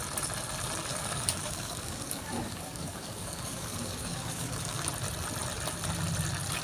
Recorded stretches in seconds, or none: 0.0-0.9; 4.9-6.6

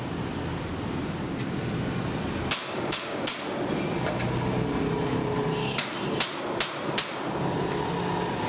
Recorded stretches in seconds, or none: 0.0-2.6; 3.3-8.5

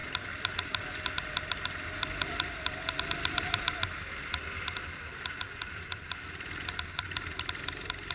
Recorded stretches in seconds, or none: 0.0-8.1

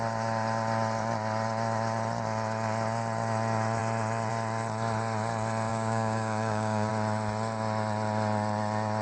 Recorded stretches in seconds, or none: 0.0-5.7; 6.9-9.0

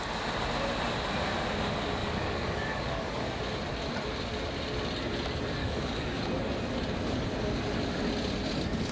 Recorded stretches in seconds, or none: 0.0-2.0; 3.4-5.6; 6.2-8.9

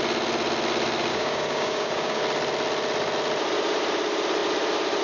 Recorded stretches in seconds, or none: 0.0-1.1; 2.2-5.0

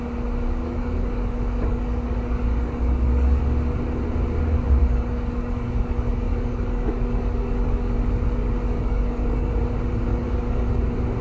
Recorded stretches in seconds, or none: 0.0-0.6; 3.4-4.8; 9.5-10.1; 10.7-11.2